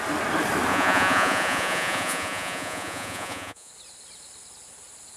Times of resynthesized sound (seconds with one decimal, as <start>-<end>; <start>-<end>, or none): 0.7-3.7